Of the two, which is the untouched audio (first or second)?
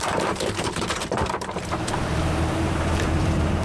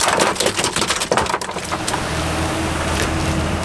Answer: second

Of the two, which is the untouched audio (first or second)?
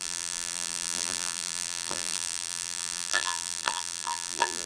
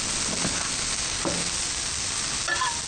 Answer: second